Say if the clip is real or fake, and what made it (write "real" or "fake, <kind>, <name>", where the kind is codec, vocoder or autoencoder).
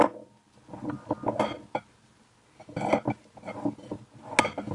real